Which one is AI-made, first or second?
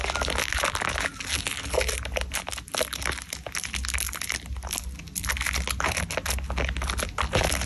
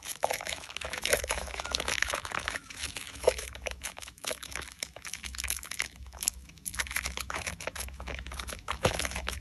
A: second